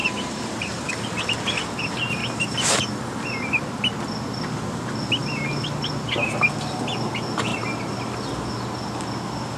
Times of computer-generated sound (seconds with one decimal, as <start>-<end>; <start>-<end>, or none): 0.0-0.9; 2.2-2.9